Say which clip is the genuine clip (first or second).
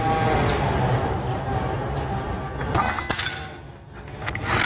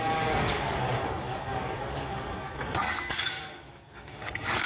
first